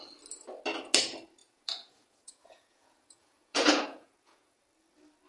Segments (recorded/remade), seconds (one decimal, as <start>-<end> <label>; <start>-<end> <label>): 0.0-1.4 recorded; 1.4-4.6 remade; 4.6-5.3 recorded